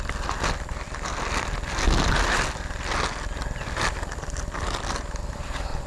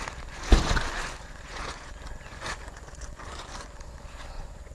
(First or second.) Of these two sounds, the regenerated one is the second